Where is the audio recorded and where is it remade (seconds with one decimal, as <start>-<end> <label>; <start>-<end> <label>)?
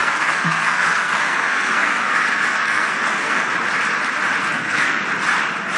0.0-3.5 remade; 3.5-4.4 recorded; 4.4-5.0 remade; 5.0-5.8 recorded